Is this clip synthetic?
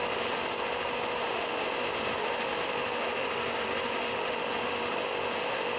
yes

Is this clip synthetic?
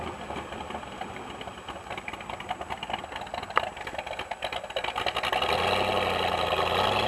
no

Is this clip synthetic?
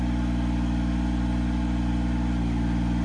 no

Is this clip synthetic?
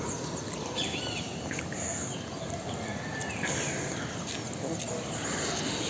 no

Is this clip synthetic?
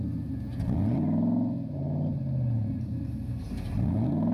no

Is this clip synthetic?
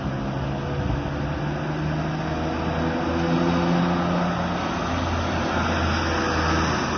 no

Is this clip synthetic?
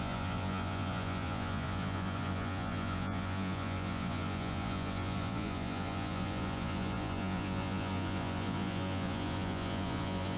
yes